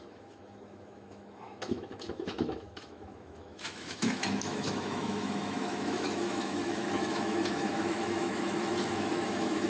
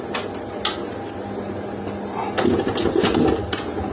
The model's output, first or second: first